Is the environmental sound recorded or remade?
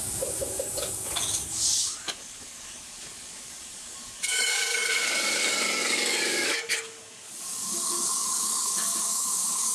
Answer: remade